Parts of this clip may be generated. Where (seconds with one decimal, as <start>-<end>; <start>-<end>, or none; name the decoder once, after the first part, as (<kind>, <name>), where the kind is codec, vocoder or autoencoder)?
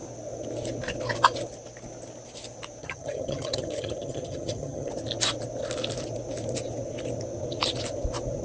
2.8-4.9 (vocoder, HiFi-GAN)